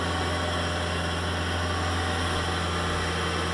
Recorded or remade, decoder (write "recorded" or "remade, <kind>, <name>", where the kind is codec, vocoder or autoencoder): recorded